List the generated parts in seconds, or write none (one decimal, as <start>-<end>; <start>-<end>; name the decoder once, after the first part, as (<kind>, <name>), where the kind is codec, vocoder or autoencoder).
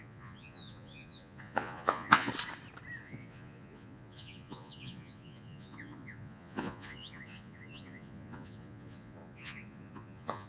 0.0-2.3 (vocoder, Vocos); 3.0-10.5